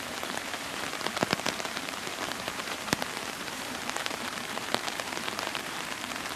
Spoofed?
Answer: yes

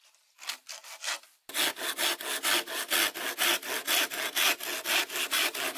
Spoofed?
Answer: no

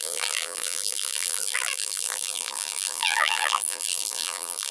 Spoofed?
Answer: yes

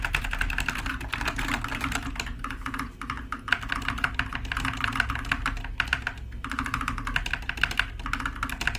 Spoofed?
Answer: no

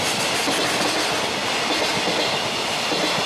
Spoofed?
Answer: no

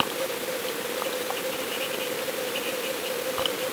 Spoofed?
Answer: yes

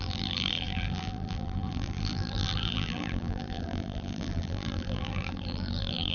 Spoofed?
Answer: yes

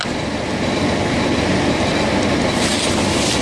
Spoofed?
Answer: no